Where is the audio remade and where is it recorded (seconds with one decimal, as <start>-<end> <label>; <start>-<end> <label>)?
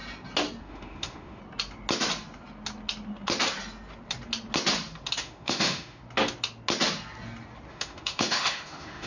0.0-0.6 recorded; 0.6-1.4 remade; 1.4-5.2 recorded; 5.2-6.0 remade; 6.0-7.7 recorded; 7.7-9.1 remade